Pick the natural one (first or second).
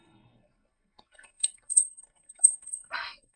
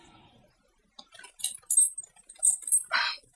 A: second